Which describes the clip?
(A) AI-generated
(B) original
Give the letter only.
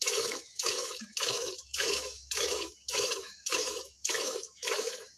A